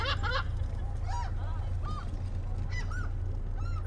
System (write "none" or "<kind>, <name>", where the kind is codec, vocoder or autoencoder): none